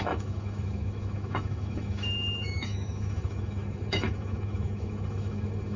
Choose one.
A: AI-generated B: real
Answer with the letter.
A